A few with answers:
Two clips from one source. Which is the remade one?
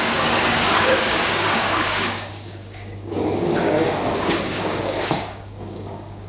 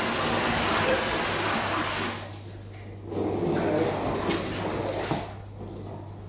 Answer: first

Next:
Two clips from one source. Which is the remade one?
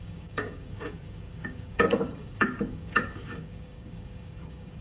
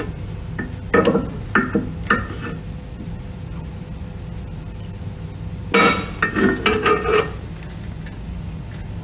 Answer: first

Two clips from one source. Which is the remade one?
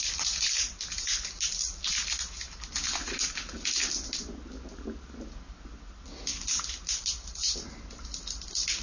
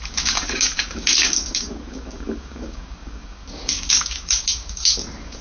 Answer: second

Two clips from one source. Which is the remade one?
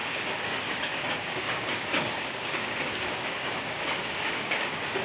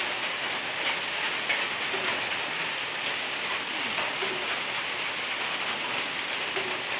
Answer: first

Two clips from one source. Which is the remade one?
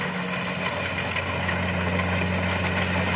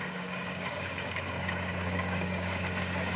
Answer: second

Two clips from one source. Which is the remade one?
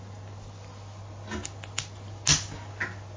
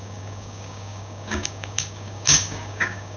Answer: second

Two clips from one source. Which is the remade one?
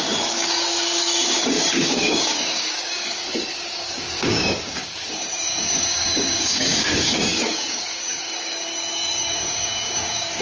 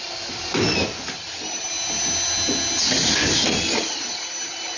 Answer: first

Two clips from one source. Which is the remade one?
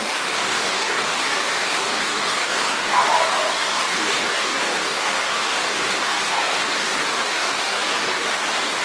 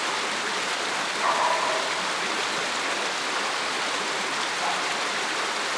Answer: first